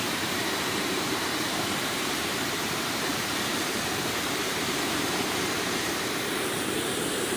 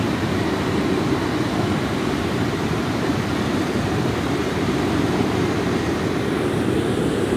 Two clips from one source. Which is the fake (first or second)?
first